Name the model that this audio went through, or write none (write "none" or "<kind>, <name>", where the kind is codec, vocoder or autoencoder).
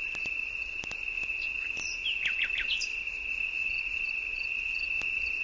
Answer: none